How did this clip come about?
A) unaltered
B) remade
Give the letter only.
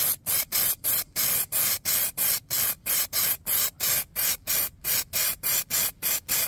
A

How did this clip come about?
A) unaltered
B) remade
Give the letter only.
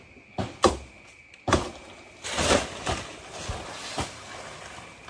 A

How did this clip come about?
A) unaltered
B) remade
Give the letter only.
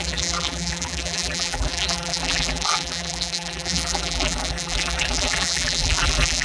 B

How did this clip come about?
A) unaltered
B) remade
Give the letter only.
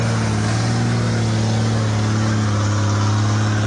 A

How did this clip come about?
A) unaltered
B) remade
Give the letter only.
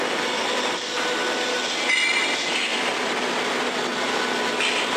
A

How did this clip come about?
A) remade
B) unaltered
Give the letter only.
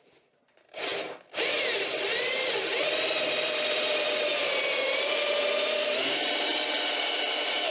B